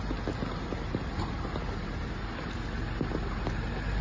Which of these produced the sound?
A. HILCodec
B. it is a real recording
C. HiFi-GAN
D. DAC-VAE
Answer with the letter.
B